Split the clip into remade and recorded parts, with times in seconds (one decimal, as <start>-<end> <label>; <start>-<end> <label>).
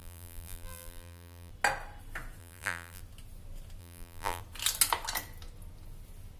0.0-1.5 remade; 1.5-2.4 recorded; 2.4-3.0 remade; 3.0-3.8 recorded; 3.8-4.4 remade; 4.4-6.4 recorded